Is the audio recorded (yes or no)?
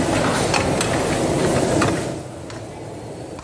yes